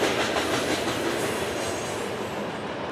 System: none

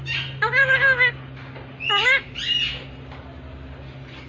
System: none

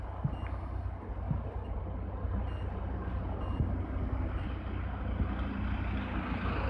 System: none